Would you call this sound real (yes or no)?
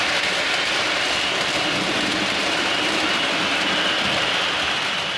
yes